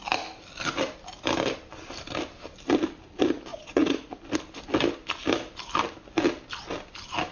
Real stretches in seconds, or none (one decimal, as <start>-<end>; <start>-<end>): 0.0-3.5; 4.2-7.3